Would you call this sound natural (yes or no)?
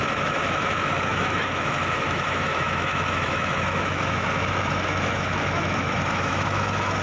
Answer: no